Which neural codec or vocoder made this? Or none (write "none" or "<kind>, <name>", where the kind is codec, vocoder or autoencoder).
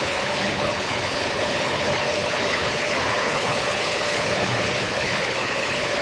codec, HILCodec